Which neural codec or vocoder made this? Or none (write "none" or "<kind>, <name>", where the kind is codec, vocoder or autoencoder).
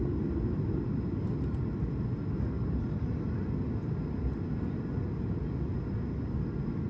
none